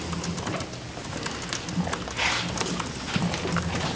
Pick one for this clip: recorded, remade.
recorded